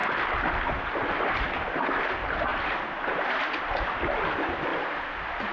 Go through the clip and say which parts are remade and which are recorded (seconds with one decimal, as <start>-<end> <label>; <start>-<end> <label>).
0.0-5.5 recorded